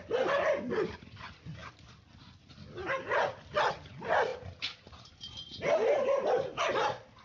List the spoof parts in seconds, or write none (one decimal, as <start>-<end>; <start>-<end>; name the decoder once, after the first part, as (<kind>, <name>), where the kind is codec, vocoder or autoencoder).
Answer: none